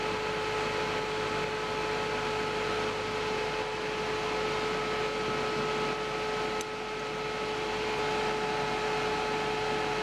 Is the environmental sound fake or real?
real